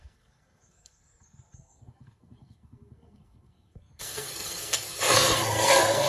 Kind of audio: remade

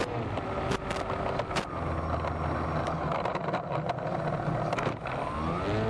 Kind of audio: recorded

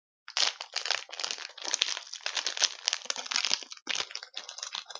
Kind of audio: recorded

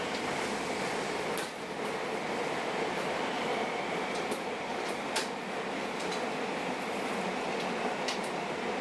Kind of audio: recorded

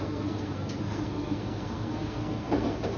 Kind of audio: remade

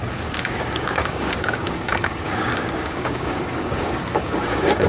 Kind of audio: remade